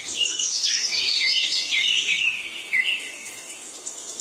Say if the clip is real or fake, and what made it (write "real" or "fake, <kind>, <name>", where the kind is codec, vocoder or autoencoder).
fake, codec, DAC